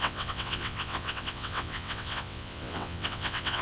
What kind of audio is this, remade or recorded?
remade